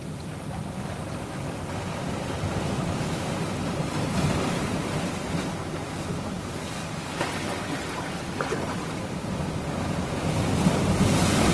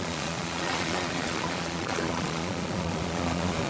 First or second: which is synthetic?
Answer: second